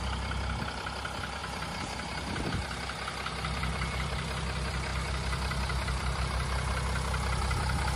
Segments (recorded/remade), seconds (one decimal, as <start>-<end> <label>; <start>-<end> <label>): 0.0-1.4 recorded; 1.4-2.4 remade; 2.4-8.0 recorded